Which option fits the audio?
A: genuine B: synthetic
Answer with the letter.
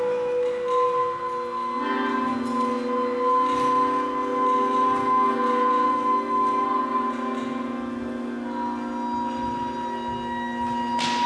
A